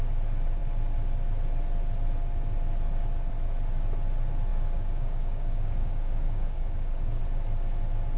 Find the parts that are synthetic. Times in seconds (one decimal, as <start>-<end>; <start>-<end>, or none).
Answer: 4.5-7.2